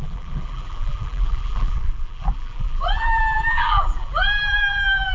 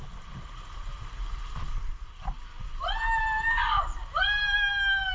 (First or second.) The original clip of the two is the second